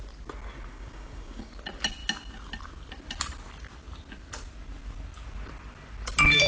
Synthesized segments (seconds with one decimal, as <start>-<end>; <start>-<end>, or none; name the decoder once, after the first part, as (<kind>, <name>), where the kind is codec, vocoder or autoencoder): 0.7-1.5 (codec, DAC)